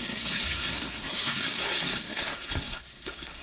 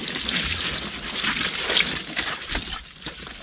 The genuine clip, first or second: second